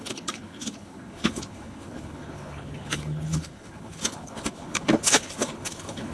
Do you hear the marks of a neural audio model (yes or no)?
yes